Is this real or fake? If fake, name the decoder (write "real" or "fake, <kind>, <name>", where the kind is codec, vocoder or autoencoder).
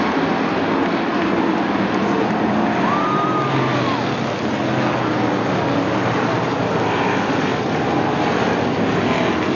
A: real